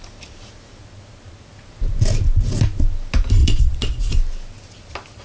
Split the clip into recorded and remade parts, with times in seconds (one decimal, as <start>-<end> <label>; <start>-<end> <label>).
0.0-3.4 recorded; 3.4-4.1 remade; 4.1-5.2 recorded